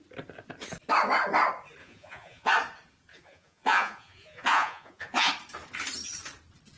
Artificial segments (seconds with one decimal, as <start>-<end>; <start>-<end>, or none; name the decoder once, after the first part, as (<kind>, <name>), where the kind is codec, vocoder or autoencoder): 1.8-2.5 (vocoder, Vocos); 3.1-5.3